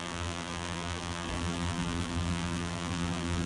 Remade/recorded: remade